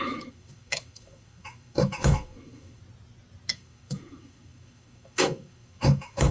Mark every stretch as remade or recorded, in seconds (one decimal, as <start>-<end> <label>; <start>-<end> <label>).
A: 0.0-2.8 remade; 2.8-3.5 recorded; 3.5-6.3 remade